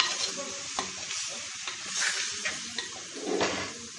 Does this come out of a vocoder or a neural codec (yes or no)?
no